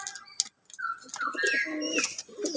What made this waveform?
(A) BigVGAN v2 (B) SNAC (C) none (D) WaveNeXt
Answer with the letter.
C